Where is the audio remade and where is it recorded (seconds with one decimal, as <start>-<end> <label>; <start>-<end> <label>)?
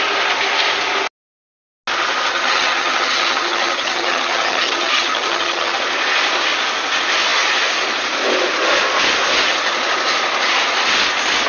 0.0-2.3 recorded; 2.3-5.8 remade; 5.8-11.5 recorded